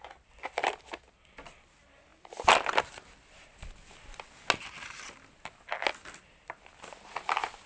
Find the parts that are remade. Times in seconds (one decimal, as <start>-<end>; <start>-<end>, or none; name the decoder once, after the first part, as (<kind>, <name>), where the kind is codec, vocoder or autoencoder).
none